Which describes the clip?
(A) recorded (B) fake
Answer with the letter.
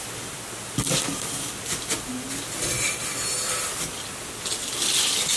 A